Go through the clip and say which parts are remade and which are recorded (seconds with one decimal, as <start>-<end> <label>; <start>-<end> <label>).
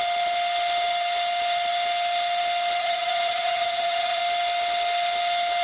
0.0-2.8 recorded; 2.8-4.2 remade; 4.2-5.6 recorded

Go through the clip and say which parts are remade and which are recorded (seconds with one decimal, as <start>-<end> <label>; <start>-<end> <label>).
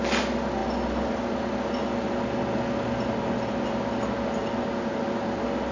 0.0-5.7 recorded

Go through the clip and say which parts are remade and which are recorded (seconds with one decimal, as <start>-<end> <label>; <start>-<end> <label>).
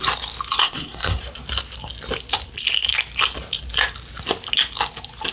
0.0-0.6 recorded; 0.6-1.2 remade; 1.2-5.3 recorded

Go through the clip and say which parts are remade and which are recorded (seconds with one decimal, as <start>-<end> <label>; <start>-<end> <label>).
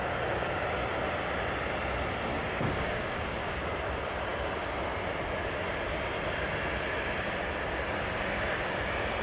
0.0-2.3 recorded; 2.3-3.6 remade; 3.6-9.2 recorded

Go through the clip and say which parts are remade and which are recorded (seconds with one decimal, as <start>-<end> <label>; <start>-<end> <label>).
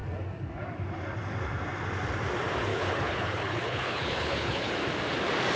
0.0-2.7 recorded; 2.7-4.7 remade; 4.7-5.6 recorded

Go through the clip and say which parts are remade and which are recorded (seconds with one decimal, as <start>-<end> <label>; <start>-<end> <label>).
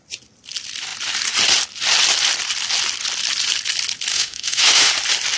0.0-4.1 recorded; 4.1-4.9 remade; 4.9-5.4 recorded